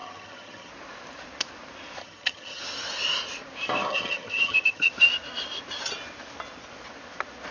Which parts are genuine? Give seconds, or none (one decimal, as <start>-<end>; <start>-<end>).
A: 0.7-2.0; 2.6-3.9; 4.9-7.5